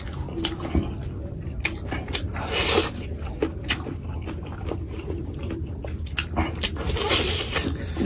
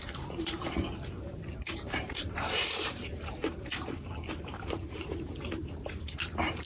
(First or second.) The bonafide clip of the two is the first